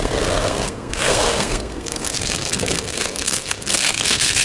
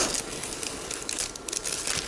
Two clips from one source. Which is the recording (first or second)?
second